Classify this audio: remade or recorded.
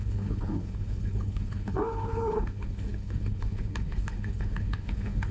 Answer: remade